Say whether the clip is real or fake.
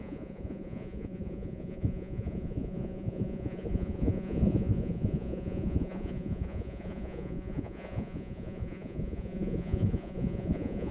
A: fake